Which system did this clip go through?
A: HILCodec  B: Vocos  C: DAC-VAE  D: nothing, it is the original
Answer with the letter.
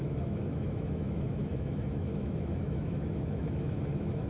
C